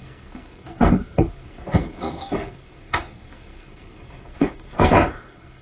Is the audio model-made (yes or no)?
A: yes